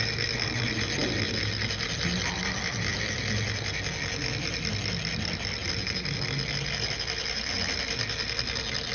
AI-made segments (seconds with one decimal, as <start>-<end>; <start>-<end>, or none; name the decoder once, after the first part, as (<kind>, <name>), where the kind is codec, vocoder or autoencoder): none